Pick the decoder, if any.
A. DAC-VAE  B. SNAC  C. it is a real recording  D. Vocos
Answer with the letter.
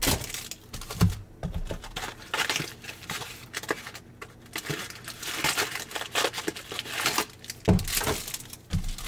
C